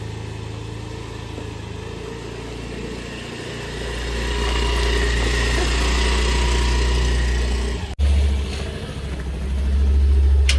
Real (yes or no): yes